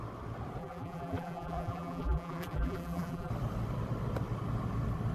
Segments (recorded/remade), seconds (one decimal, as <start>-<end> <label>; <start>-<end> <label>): 0.0-0.6 recorded; 0.6-3.3 remade; 3.3-5.1 recorded